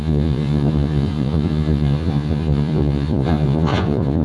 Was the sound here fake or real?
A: fake